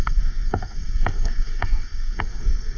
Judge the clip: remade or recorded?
remade